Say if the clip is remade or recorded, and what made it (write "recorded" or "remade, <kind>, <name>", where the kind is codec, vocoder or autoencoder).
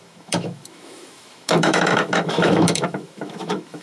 remade, autoencoder, DAC-VAE